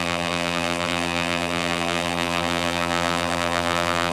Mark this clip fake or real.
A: fake